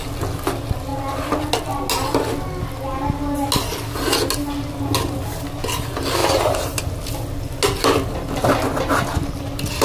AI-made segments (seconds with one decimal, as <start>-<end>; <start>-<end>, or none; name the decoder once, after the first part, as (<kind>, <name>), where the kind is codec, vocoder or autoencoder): 6.2-6.8 (vocoder, BigVGAN v2)

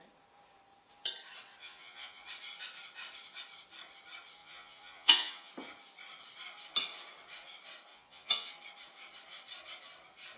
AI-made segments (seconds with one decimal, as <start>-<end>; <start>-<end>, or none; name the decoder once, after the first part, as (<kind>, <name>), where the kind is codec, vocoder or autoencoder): 1.6-2.2 (vocoder, Vocos); 4.4-5.5; 7.9-8.5

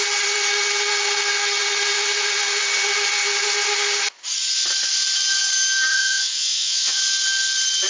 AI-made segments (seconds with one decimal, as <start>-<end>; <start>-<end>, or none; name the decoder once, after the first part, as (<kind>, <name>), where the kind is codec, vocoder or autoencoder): 5.9-7.0 (vocoder, Vocos)

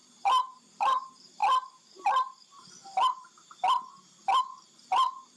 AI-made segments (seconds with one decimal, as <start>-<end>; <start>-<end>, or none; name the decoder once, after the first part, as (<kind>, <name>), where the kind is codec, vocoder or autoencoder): 0.0-1.4 (vocoder, BigVGAN v2); 4.4-5.4

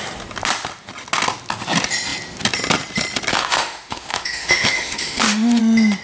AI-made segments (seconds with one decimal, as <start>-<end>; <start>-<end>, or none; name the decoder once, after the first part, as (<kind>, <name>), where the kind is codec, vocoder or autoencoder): 3.3-5.6 (autoencoder, DAC-VAE)

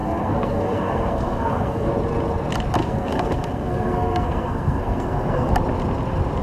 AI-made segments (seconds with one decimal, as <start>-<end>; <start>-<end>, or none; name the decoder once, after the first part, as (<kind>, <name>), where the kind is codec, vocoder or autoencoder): 0.0-1.9 (codec, SNAC); 2.8-5.5